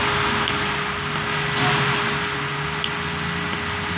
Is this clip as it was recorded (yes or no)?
yes